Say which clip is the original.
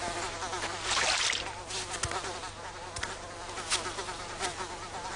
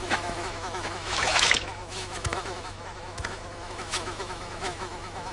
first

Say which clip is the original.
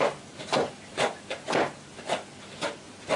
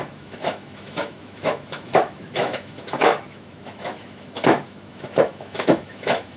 first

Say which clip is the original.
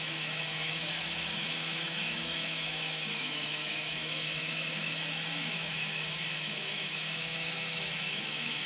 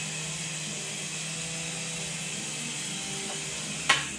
second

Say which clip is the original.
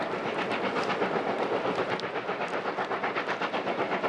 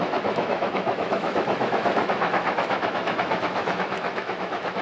first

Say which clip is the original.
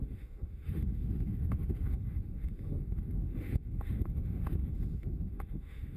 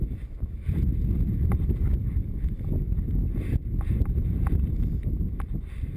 second